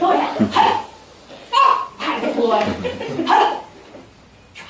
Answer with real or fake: real